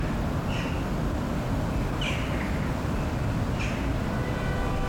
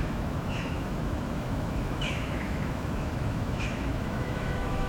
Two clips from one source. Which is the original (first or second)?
first